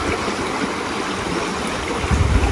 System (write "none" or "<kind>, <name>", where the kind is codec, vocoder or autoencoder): none